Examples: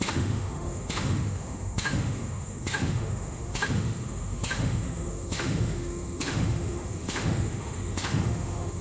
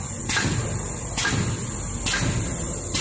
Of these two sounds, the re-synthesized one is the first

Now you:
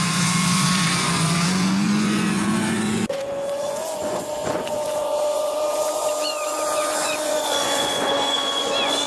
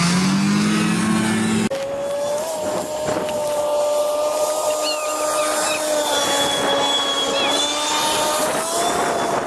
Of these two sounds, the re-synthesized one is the first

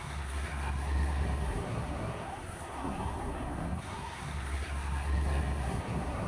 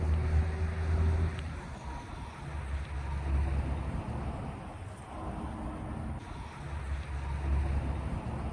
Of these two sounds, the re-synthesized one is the first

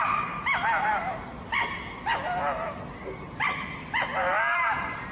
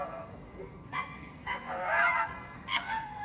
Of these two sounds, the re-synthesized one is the second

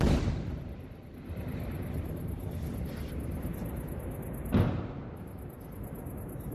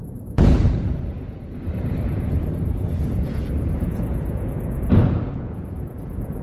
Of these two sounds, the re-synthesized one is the second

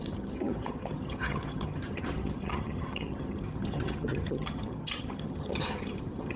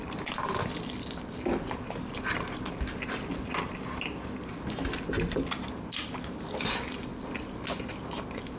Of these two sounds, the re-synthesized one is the first